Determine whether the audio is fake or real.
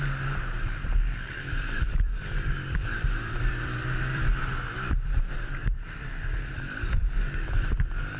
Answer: fake